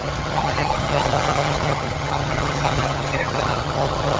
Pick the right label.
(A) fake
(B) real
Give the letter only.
A